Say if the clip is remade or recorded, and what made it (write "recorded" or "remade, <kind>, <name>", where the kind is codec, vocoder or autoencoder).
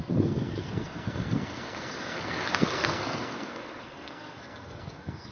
remade, codec, SNAC